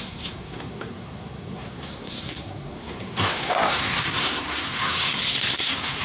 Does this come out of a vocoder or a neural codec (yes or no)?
yes